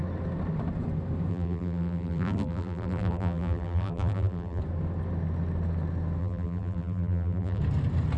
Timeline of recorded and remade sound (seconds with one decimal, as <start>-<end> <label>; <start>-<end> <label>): 0.0-1.3 recorded; 1.3-4.6 remade; 4.6-6.2 recorded; 6.2-7.6 remade; 7.6-8.2 recorded